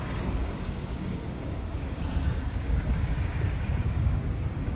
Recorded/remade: remade